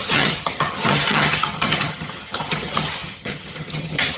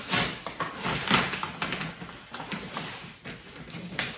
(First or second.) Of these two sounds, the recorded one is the second